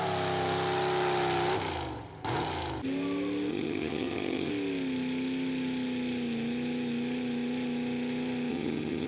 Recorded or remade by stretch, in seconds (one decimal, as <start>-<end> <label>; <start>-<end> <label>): 0.0-3.5 recorded; 3.5-4.5 remade; 4.5-8.5 recorded; 8.5-9.1 remade